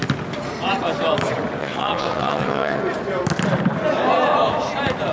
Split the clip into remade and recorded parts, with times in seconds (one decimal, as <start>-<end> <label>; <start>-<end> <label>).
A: 0.0-1.6 recorded; 1.6-2.8 remade; 2.8-5.1 recorded